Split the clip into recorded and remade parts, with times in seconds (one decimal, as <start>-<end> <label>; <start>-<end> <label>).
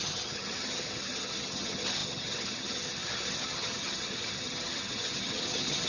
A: 0.0-5.9 remade